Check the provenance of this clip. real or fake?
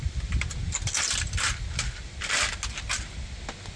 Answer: real